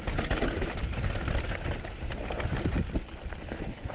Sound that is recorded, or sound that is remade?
recorded